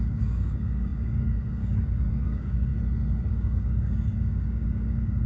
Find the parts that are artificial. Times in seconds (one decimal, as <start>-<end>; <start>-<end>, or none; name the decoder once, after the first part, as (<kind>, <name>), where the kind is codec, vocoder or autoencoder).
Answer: 0.0-2.7 (codec, DAC); 3.3-5.3